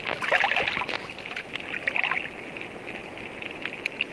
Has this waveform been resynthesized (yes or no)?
no